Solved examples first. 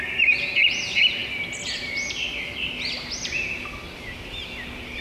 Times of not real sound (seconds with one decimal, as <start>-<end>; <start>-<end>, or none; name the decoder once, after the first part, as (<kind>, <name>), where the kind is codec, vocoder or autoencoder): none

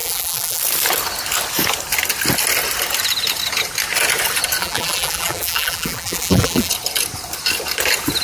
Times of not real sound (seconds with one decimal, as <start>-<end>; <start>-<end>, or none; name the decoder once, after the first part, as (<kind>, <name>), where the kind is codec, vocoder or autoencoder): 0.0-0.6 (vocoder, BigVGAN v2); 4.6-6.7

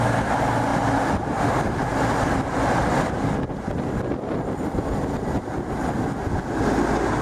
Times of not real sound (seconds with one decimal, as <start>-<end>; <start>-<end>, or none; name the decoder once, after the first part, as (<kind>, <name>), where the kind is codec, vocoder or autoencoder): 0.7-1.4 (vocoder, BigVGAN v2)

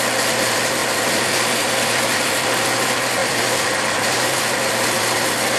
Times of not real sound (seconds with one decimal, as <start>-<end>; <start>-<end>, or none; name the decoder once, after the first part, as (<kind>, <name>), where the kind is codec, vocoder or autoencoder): 3.2-4.4 (vocoder, BigVGAN v2)